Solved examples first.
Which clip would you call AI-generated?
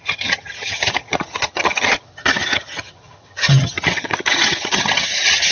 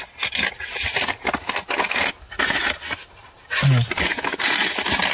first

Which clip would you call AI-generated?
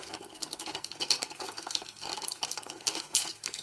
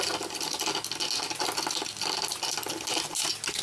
first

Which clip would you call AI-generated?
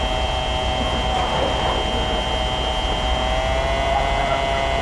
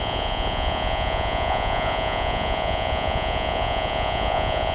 second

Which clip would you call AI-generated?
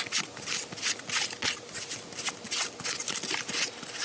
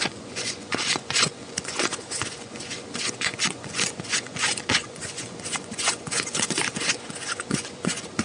second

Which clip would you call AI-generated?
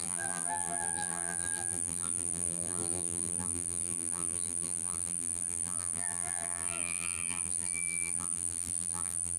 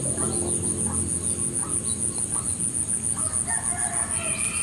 first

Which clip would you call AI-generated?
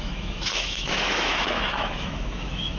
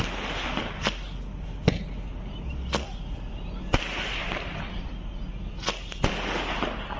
first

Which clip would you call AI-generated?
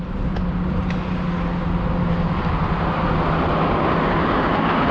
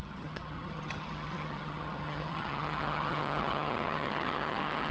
second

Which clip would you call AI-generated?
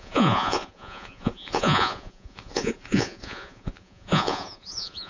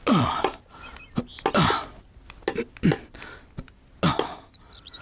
first